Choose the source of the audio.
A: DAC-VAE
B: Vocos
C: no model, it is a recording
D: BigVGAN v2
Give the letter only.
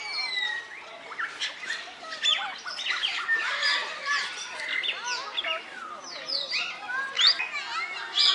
C